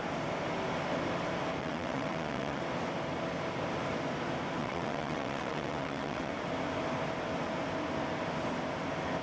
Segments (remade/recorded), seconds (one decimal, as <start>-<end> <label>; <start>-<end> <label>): 0.0-1.6 recorded; 1.6-2.6 remade; 2.6-4.6 recorded; 4.6-6.3 remade; 6.3-9.2 recorded